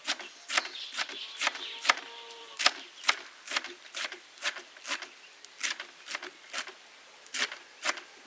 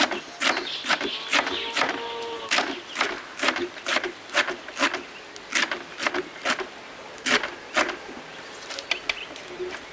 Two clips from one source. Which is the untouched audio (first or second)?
second